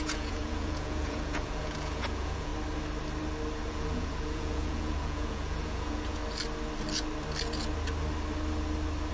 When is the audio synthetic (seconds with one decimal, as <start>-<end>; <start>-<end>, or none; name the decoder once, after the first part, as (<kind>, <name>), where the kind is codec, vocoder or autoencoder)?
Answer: 0.0-2.5 (vocoder, Vocos); 3.7-6.2